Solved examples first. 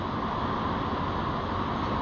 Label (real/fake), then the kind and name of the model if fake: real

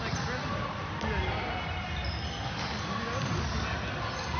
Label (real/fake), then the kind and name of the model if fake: real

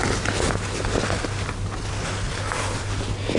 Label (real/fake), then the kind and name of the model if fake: real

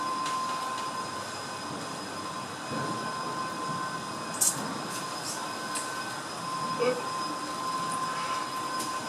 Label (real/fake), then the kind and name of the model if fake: real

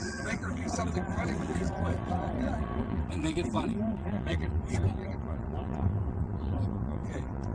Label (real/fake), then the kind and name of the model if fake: fake, vocoder, WaveNeXt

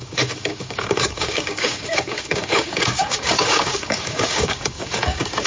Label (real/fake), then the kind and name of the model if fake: fake, codec, DAC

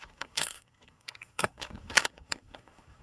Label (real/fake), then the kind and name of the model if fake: fake, codec, SNAC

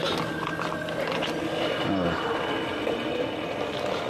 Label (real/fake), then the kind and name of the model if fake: real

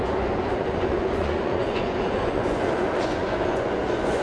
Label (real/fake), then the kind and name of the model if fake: fake, vocoder, Vocos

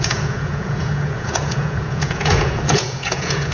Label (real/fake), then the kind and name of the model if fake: fake, vocoder, Vocos